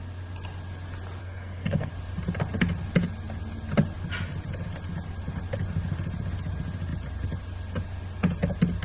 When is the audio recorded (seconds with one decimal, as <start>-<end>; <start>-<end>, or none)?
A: 0.0-1.2; 1.9-8.8